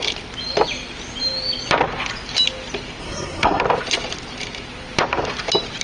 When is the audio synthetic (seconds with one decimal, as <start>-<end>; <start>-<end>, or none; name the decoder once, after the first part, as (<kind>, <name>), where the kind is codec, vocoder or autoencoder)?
3.0-3.6 (codec, SNAC)